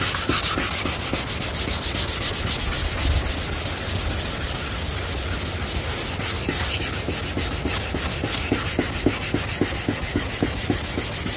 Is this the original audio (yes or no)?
yes